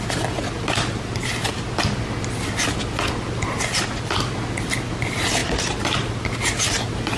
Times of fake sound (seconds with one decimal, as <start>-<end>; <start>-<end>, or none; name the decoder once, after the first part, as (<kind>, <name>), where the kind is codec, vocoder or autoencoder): 5.4-6.1 (vocoder, BigVGAN v2)